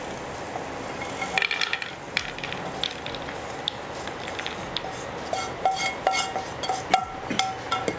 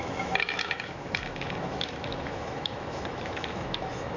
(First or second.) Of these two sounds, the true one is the first